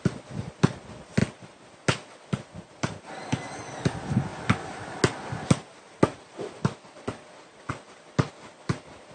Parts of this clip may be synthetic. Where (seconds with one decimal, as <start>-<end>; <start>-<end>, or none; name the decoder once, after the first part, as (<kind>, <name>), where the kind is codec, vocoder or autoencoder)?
none